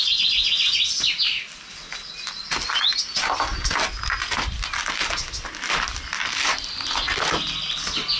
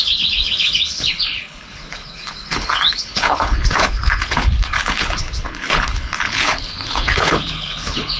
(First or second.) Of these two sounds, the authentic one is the first